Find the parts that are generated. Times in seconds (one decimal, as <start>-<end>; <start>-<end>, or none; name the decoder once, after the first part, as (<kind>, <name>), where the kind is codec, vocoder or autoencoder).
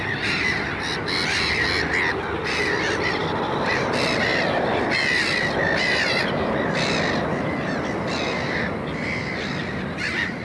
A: none